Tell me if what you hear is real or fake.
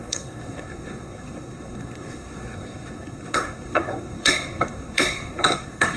fake